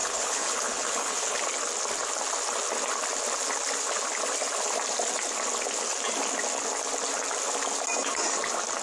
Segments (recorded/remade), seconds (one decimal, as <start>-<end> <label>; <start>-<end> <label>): 0.0-1.4 remade; 1.4-8.8 recorded